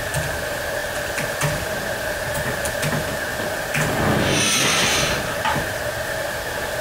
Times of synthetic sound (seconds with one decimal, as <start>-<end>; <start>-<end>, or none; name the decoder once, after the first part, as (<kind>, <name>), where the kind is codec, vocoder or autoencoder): 4.7-5.8 (vocoder, BigVGAN v2)